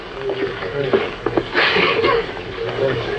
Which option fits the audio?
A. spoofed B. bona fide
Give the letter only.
A